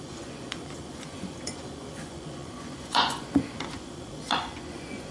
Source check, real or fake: fake